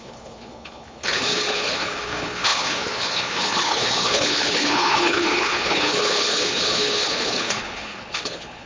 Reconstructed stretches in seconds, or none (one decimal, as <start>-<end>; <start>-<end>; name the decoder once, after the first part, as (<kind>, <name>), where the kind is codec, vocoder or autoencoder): 0.0-8.7 (codec, HILCodec)